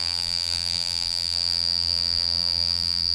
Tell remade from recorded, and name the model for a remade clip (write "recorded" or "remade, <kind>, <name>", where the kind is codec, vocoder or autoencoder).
remade, vocoder, BigVGAN v2